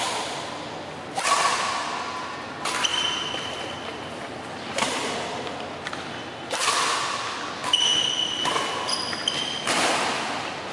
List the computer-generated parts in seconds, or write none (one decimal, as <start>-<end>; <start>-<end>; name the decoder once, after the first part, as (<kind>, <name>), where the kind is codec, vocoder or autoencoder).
2.9-5.4 (vocoder, BigVGAN v2)